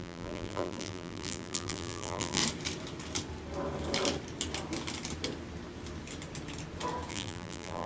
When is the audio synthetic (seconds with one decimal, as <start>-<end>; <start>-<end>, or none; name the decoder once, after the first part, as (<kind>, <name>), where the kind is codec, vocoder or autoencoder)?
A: 0.0-2.4 (vocoder, BigVGAN v2); 7.1-7.9